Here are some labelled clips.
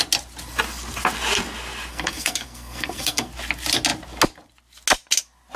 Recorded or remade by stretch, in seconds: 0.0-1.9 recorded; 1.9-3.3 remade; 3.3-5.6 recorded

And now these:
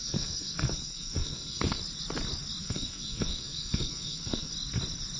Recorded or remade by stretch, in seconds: 0.0-1.8 remade; 1.8-2.6 recorded; 2.6-4.5 remade; 4.5-5.2 recorded

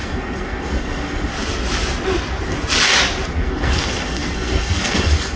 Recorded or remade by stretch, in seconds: 0.0-1.3 remade; 1.3-3.3 recorded; 3.3-5.4 remade

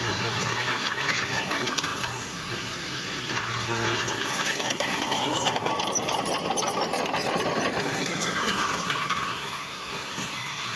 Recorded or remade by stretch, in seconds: 0.0-5.7 remade; 5.7-7.8 recorded; 7.8-10.8 remade

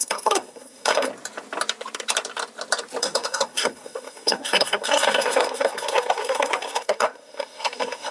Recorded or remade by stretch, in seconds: 0.0-1.1 remade; 1.1-3.0 recorded; 3.0-8.1 remade